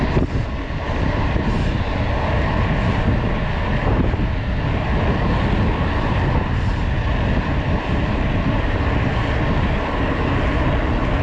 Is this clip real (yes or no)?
yes